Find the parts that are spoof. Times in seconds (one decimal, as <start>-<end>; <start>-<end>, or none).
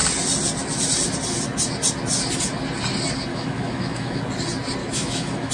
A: 3.3-4.2; 4.8-5.5